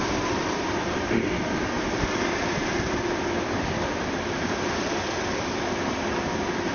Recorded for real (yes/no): yes